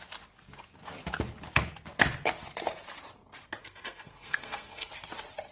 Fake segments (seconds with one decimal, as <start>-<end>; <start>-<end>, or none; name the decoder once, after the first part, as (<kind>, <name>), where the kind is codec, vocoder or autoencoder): 3.6-4.9 (codec, SNAC)